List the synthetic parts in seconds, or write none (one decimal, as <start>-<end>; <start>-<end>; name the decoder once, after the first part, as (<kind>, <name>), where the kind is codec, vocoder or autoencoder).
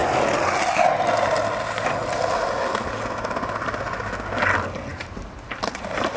none